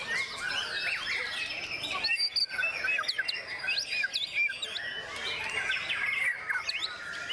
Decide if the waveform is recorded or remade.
recorded